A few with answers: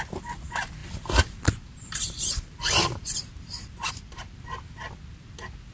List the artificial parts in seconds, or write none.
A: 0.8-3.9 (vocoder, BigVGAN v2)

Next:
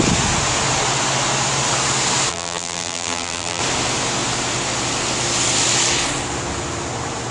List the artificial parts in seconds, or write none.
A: 2.3-3.6 (vocoder, BigVGAN v2)

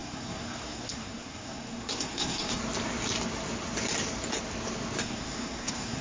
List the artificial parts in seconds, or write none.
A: 0.0-2.6 (codec, SNAC); 5.0-6.0